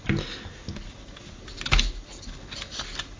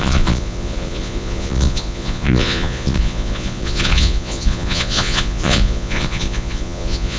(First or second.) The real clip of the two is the first